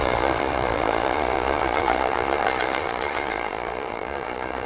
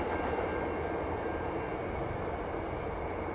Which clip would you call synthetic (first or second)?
first